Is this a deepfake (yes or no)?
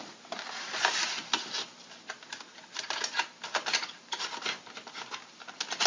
no